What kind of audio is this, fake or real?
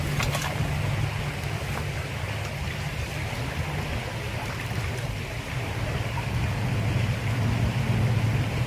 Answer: real